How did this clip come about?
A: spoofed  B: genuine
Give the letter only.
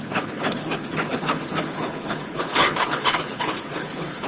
A